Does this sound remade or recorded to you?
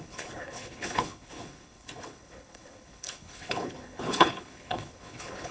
remade